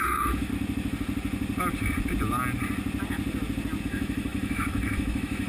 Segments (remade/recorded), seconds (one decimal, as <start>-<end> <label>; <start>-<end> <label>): 0.0-0.5 remade; 0.5-3.8 recorded; 3.8-5.5 remade